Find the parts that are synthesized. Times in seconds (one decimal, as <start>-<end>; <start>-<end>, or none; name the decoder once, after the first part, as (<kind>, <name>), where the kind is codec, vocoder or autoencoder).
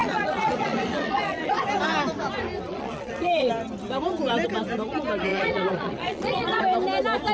0.0-1.5 (vocoder, Vocos); 2.7-3.5; 5.3-6.6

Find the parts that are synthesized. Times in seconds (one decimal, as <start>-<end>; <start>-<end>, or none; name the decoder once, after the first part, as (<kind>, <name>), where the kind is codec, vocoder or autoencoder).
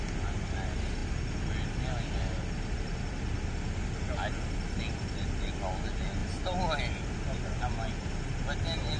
none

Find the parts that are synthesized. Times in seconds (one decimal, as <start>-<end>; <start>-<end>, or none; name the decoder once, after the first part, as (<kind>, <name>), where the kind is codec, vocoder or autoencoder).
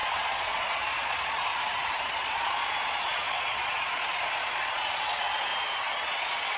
0.0-1.5 (vocoder, Vocos); 2.0-5.5; 6.0-6.6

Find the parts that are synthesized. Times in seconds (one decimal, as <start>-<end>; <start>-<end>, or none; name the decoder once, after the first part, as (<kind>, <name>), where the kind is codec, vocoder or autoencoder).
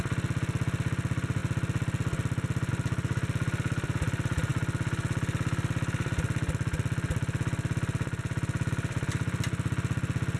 none